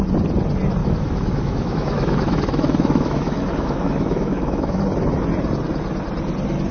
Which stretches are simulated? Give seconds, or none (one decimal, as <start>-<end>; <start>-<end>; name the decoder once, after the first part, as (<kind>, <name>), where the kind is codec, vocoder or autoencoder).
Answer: 0.8-4.8 (autoencoder, DAC-VAE)